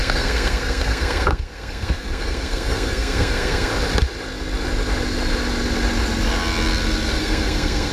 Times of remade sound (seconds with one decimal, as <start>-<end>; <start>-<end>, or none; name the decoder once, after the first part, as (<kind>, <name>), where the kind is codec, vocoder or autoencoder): 0.0-3.7 (codec, SNAC); 7.2-7.9